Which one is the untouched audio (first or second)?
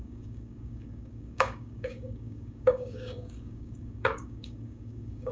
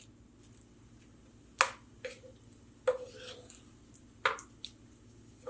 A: second